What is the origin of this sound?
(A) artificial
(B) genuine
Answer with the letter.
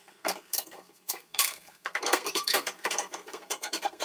A